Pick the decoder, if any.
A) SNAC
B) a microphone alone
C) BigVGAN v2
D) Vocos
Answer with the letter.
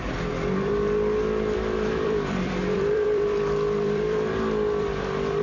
C